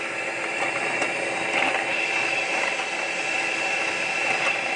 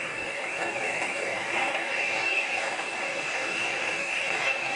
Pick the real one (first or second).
first